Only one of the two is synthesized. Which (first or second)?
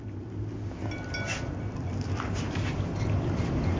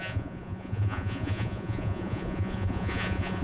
second